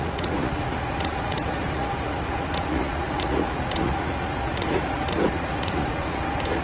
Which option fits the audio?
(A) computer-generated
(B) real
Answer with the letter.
A